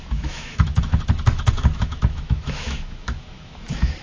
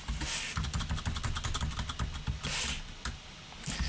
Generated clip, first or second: first